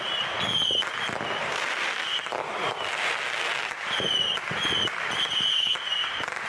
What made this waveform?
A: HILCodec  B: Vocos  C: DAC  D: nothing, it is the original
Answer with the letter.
D